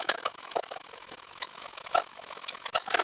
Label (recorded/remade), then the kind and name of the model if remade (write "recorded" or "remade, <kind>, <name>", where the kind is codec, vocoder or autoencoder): remade, autoencoder, DAC-VAE